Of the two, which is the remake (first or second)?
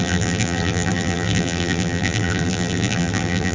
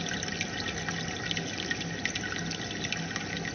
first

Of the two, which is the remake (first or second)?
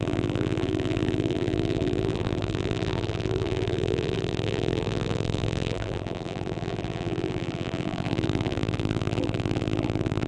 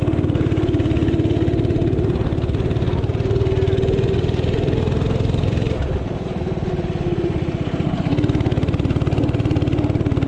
first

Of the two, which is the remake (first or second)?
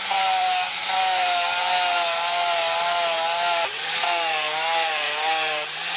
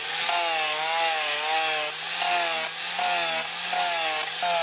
first